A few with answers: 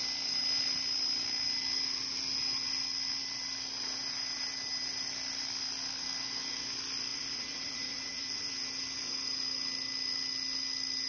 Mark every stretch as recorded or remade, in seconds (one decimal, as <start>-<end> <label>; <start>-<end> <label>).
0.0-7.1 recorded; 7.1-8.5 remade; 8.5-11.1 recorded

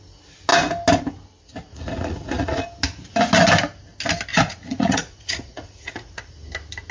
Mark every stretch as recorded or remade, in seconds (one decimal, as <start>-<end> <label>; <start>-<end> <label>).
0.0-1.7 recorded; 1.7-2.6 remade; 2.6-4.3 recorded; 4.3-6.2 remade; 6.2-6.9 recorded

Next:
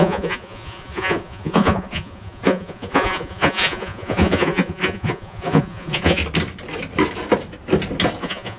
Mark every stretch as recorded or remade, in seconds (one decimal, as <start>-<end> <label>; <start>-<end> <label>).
0.0-6.2 remade; 6.2-8.2 recorded; 8.2-8.6 remade

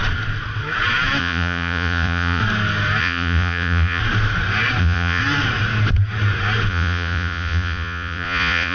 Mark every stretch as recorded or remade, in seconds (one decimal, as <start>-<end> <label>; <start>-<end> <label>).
0.0-1.2 recorded; 1.2-2.4 remade; 2.4-3.0 recorded; 3.0-4.0 remade; 4.0-4.8 recorded; 4.8-5.2 remade; 5.2-6.7 recorded; 6.7-8.7 remade

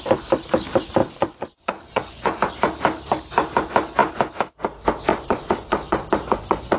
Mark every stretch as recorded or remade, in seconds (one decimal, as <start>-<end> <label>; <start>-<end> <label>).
0.0-1.0 recorded; 1.0-2.4 remade; 2.4-5.1 recorded; 5.1-6.8 remade